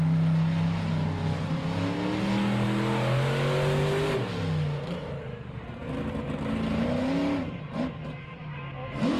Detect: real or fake real